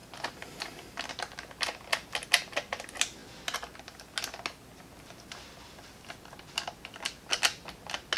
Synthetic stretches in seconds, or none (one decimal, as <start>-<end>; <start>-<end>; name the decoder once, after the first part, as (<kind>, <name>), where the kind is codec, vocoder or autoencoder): none